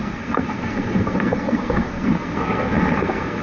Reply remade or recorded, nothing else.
remade